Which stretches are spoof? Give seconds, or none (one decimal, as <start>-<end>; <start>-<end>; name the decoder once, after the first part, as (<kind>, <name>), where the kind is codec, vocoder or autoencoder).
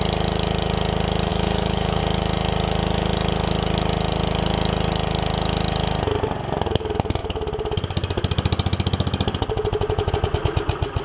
1.3-2.0 (autoencoder, DAC-VAE)